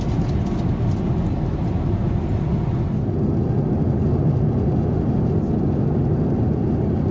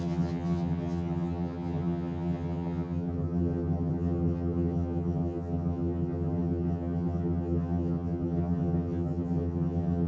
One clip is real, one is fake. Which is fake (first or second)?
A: second